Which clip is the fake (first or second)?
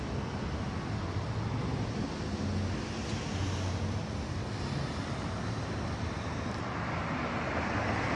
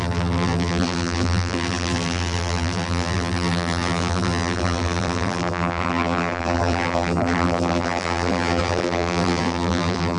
second